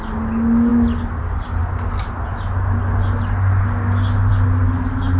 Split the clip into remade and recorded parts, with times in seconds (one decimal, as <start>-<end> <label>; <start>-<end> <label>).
0.0-5.2 recorded